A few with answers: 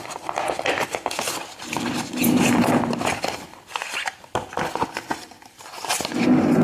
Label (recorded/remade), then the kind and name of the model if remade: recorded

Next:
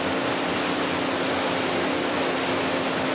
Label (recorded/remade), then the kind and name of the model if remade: recorded